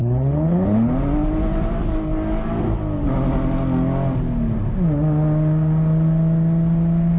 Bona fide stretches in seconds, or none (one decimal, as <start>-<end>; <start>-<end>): 1.0-7.2